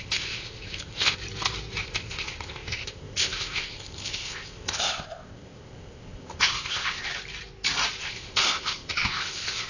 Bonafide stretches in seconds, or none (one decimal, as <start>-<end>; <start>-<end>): 1.2-1.8; 7.1-8.0